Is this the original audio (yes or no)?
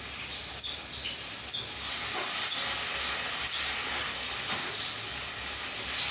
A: yes